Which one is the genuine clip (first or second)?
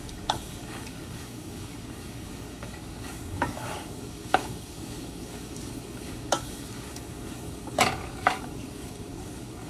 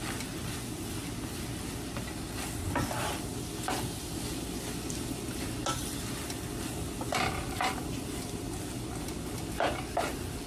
second